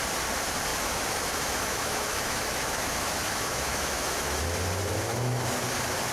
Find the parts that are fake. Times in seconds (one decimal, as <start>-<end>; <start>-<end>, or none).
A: 0.7-4.4; 5.1-5.6